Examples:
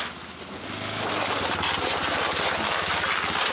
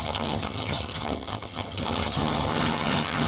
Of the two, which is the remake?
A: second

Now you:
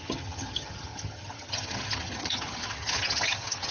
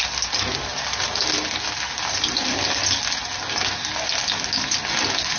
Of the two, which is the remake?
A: first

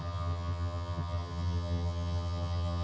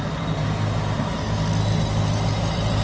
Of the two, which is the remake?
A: first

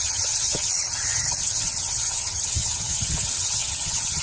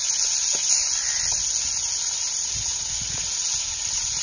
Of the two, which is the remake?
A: first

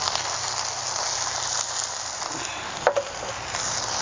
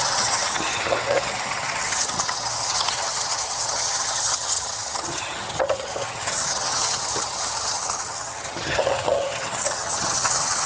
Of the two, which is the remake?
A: second